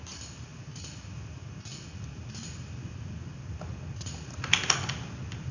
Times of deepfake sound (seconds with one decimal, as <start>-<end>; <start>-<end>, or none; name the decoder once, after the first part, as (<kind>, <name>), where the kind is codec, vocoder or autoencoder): none

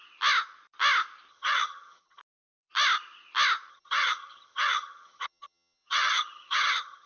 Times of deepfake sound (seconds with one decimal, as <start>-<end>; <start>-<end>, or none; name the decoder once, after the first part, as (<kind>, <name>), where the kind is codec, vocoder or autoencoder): 1.3-2.2 (vocoder, HiFi-GAN); 3.7-7.1